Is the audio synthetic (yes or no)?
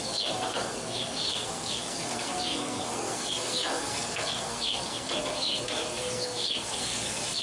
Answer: yes